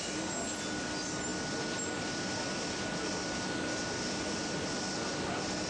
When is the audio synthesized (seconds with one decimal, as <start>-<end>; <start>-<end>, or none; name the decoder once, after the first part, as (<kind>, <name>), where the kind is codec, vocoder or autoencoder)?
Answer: none